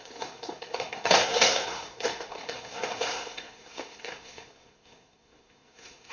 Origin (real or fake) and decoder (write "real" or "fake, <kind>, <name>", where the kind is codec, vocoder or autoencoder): fake, codec, SNAC